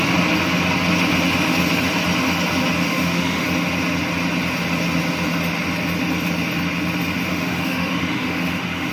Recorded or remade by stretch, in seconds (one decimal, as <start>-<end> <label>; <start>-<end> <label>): 0.0-2.9 recorded; 2.9-3.5 remade; 3.5-7.3 recorded; 7.3-8.9 remade